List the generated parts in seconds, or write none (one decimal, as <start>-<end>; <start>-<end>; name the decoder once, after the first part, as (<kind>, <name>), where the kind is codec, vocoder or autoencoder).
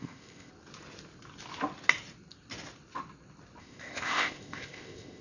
0.0-0.5 (codec, ZipCodec); 3.6-5.2